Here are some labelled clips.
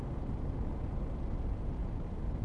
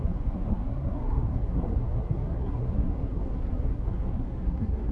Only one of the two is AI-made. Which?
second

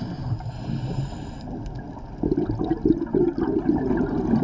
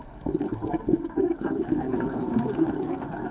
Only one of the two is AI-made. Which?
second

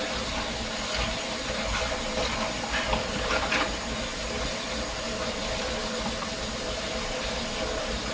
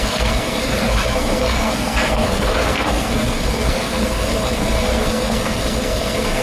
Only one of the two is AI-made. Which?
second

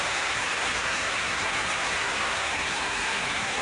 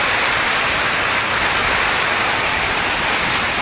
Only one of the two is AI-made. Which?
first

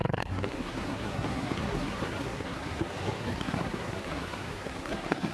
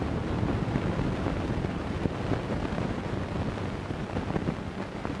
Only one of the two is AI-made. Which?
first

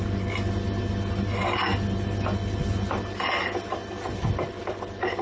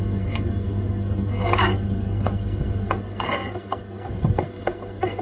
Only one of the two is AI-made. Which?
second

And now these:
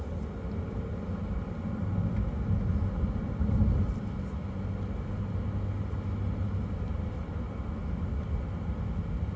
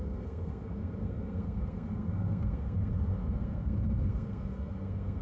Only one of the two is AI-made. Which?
second